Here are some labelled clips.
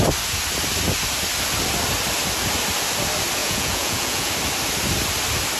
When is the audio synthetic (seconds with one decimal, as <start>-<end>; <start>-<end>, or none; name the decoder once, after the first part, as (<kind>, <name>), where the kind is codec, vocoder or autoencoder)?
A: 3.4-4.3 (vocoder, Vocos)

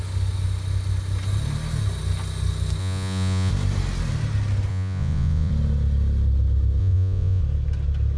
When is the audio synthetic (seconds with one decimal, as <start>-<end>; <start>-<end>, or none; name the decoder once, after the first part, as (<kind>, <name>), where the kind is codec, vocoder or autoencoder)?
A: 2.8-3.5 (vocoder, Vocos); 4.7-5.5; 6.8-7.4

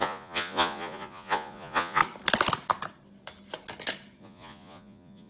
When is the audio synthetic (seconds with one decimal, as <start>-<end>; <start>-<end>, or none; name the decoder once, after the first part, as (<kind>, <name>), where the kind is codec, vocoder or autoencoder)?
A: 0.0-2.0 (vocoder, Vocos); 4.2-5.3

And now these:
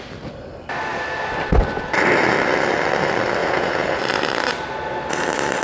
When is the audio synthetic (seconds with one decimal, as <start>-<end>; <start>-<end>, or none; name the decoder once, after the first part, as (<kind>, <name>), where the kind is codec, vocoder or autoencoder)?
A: 3.4-4.0 (vocoder, Vocos)